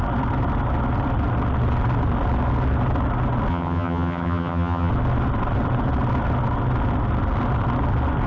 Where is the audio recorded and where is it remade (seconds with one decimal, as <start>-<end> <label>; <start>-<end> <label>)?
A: 0.0-3.5 recorded; 3.5-4.9 remade; 4.9-8.3 recorded